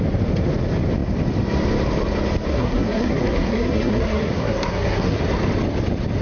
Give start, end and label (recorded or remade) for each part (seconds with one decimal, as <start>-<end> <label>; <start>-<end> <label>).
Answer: 0.0-2.5 recorded; 2.5-5.2 remade; 5.2-6.2 recorded